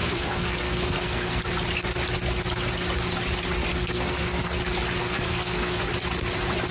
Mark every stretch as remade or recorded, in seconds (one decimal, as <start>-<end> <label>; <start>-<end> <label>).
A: 0.0-1.4 remade; 1.4-3.7 recorded; 3.7-4.5 remade; 4.5-5.0 recorded; 5.0-5.8 remade; 5.8-6.7 recorded